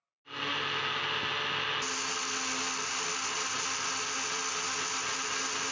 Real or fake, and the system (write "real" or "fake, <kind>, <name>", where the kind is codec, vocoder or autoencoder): real